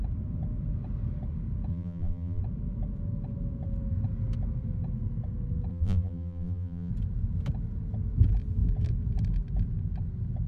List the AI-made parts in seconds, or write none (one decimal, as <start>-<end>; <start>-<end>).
1.7-2.4; 5.7-6.9